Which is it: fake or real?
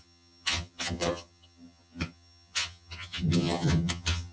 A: fake